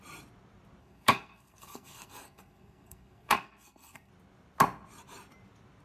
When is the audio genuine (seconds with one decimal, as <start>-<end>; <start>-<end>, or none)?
0.0-0.8; 4.1-5.8